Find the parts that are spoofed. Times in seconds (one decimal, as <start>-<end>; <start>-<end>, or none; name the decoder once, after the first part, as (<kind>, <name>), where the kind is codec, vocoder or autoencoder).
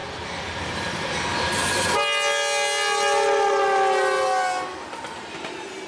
none